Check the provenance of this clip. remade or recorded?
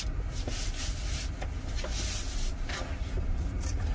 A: remade